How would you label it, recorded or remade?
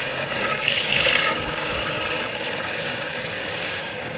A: remade